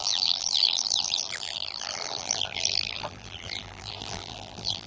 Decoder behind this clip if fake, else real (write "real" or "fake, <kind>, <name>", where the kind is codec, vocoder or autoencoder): fake, vocoder, BigVGAN v2